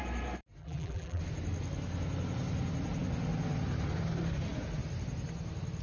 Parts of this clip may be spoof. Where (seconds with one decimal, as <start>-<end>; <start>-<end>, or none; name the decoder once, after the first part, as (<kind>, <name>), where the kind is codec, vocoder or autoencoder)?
0.6-1.2 (vocoder, BigVGAN v2)